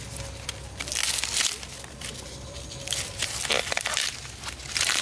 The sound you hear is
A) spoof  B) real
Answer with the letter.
B